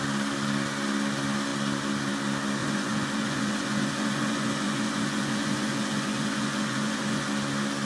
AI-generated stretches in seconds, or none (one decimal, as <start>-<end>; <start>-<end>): 2.6-7.3